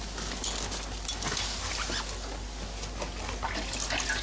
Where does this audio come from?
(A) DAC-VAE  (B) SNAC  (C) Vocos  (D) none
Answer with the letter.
D